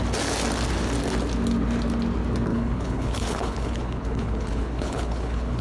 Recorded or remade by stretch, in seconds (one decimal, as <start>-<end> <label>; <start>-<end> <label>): 0.0-2.5 recorded; 2.5-5.6 remade